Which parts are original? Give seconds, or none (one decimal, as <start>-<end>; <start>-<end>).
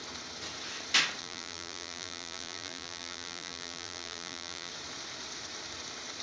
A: 0.0-1.2; 4.7-6.2